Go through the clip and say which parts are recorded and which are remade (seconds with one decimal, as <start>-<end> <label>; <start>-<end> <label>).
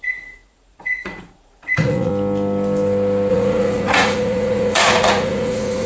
0.0-2.1 remade; 2.1-3.3 recorded; 3.3-5.9 remade